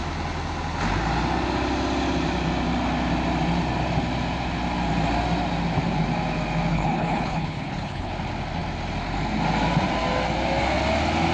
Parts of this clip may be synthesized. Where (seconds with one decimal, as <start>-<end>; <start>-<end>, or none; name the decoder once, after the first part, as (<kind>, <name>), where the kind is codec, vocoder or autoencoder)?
6.7-8.1 (codec, HILCodec)